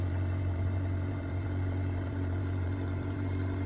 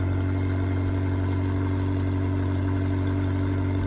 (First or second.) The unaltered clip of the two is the second